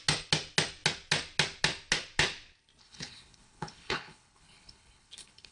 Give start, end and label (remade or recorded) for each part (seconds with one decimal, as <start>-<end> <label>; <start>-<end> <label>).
0.0-2.8 recorded; 2.8-5.5 remade